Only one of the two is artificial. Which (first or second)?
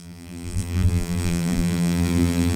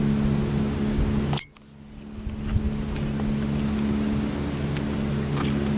first